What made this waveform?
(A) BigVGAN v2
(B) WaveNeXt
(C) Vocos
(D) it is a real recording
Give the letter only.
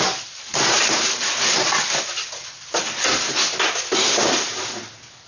D